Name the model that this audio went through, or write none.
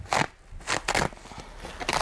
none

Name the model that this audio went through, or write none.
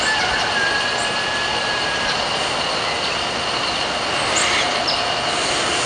none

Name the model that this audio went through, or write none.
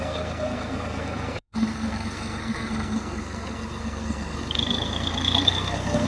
codec, SNAC